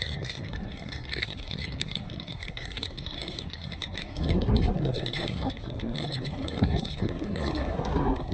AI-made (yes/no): yes